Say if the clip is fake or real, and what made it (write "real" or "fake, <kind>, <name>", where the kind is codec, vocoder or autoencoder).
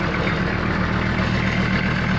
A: real